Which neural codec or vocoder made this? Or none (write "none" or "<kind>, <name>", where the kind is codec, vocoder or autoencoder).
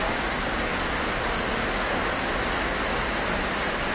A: none